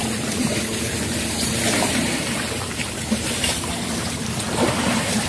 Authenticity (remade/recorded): remade